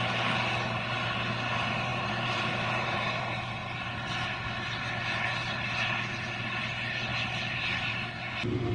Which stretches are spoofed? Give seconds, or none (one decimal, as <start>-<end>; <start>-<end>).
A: 1.9-3.2; 7.1-7.9